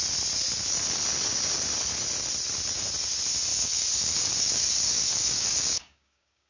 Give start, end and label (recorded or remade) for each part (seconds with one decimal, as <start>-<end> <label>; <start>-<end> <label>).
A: 0.0-3.5 recorded; 3.5-6.5 remade